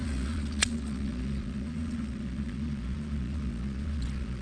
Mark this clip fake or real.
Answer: fake